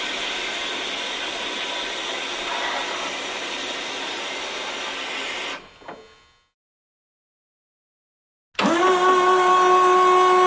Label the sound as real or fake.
real